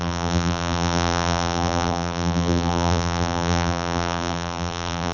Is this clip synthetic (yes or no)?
yes